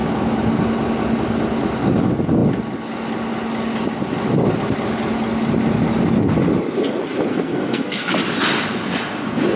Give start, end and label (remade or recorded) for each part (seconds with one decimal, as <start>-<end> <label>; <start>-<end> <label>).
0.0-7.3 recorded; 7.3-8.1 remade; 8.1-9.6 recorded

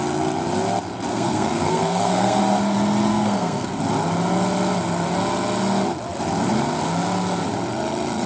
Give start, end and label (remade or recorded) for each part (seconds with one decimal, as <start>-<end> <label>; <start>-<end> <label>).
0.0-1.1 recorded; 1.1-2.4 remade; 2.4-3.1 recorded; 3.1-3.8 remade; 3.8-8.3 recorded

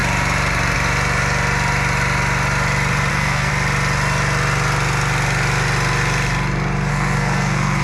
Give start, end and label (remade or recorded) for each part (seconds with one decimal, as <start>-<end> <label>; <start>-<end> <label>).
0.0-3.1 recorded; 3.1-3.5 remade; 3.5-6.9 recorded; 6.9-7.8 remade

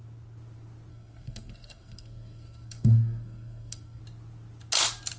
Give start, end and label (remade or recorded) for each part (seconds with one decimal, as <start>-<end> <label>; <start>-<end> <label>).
0.0-0.9 recorded; 0.9-4.0 remade; 4.0-5.2 recorded

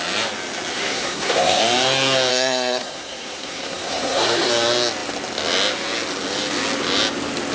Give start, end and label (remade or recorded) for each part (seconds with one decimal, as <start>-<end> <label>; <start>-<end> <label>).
0.0-0.7 recorded; 0.7-1.6 remade; 1.6-2.3 recorded; 2.3-4.5 remade; 4.5-7.5 recorded

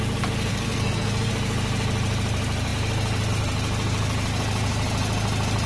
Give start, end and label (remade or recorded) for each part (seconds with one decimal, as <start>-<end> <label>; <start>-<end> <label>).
0.0-0.5 recorded; 0.5-1.3 remade; 1.3-5.7 recorded

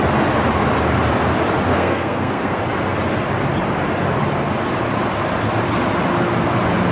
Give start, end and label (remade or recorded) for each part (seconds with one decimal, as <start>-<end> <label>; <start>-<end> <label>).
0.0-1.7 recorded; 1.7-2.6 remade; 2.6-6.9 recorded